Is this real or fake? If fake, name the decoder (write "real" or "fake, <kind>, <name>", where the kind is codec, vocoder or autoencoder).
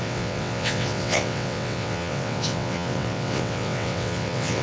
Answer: fake, vocoder, WaveNeXt